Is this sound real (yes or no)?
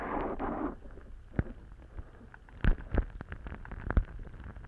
yes